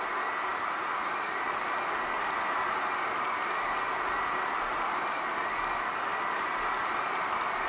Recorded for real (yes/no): yes